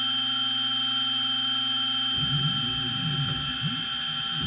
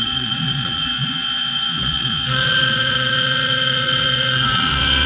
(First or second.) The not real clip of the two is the second